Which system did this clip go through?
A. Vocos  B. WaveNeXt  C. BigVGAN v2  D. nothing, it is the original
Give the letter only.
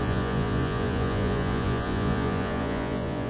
A